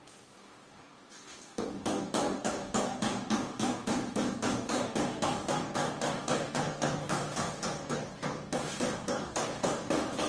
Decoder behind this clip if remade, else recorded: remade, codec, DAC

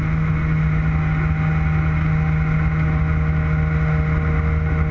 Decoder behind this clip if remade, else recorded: recorded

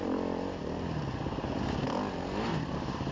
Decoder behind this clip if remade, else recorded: recorded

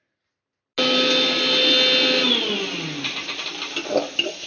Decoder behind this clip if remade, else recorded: recorded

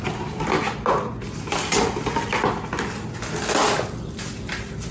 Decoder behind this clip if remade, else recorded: recorded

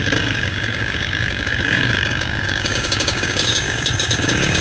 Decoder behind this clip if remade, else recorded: remade, codec, DAC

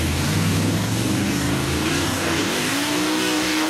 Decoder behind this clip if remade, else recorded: remade, codec, DAC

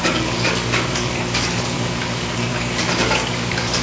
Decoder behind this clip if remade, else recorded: remade, codec, DAC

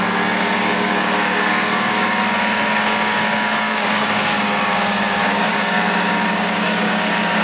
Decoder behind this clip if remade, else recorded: remade, codec, DAC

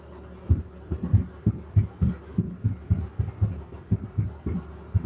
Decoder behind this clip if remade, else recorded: recorded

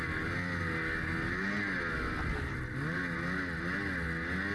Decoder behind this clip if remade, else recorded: recorded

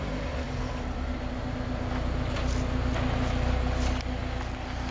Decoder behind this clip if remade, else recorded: recorded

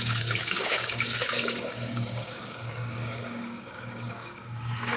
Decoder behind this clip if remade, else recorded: remade, codec, DAC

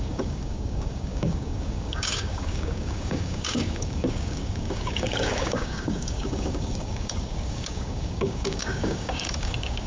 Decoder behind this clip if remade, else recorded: remade, codec, DAC